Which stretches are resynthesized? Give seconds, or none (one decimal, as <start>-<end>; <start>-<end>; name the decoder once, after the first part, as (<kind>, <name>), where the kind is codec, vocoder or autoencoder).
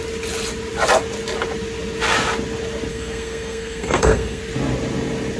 2.9-4.4 (codec, SNAC)